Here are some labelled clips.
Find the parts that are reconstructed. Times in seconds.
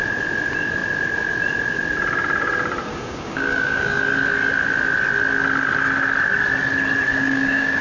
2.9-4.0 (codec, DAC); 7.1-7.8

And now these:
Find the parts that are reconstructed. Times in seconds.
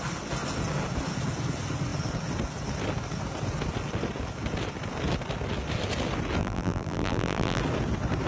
6.4-7.6 (vocoder, BigVGAN v2)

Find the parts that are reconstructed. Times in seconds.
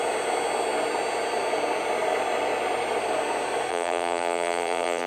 3.7-5.1 (vocoder, BigVGAN v2)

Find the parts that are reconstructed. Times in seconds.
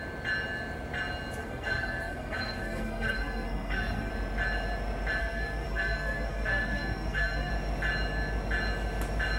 1.4-4.1 (codec, SNAC); 5.2-7.5